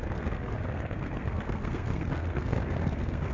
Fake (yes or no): yes